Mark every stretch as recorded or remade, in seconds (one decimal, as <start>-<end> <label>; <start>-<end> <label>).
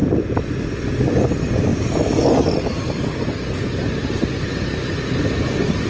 0.0-5.9 recorded